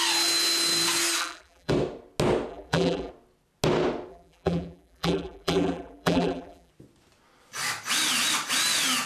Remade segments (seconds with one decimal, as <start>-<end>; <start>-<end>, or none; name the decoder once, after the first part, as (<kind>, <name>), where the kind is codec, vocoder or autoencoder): 1.2-1.7 (vocoder, BigVGAN v2); 2.5-3.1; 4.1-6.7